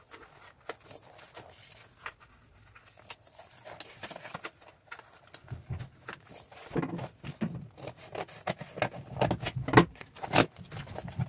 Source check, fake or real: real